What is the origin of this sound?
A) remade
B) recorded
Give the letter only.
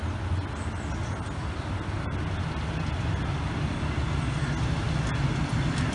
B